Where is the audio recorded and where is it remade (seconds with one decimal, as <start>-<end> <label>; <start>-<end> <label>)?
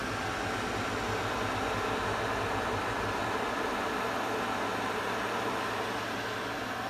0.0-6.9 recorded